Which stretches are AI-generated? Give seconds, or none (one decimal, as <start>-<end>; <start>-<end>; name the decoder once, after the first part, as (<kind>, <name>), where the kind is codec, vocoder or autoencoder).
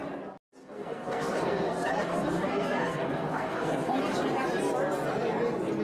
0.6-4.0 (codec, SNAC)